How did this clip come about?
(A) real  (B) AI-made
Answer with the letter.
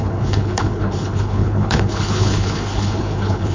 B